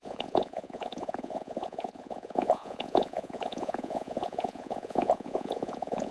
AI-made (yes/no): yes